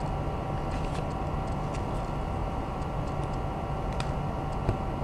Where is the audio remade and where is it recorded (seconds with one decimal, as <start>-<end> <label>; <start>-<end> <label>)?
0.0-2.4 recorded; 2.4-3.3 remade; 3.3-5.0 recorded